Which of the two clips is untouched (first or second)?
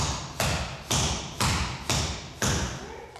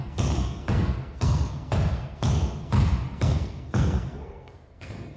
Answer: first